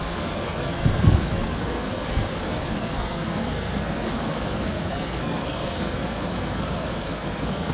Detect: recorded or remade remade